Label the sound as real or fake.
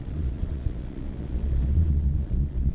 fake